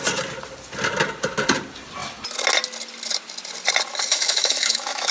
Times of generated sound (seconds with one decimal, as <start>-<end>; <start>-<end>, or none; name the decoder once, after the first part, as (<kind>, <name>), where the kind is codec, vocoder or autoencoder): 4.1-5.1 (autoencoder, DAC-VAE)

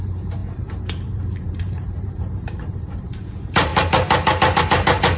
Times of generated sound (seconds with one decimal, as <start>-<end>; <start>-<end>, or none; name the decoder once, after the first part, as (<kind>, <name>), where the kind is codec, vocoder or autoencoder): 0.0-3.7 (vocoder, BigVGAN v2)

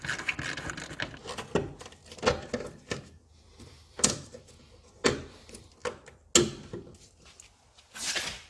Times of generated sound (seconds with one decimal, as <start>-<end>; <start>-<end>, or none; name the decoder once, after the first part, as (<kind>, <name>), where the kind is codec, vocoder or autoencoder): none

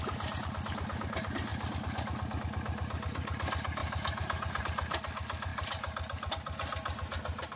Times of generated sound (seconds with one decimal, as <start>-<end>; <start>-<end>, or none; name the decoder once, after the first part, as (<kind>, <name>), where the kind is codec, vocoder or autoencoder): 3.8-4.6 (vocoder, BigVGAN v2); 5.5-6.3